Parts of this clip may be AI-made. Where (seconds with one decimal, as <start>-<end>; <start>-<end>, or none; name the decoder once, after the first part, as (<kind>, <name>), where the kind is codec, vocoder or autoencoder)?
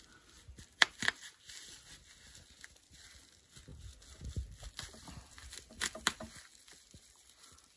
none